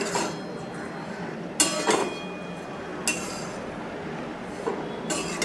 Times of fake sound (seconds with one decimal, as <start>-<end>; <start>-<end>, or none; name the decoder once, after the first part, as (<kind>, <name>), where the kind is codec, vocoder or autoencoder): none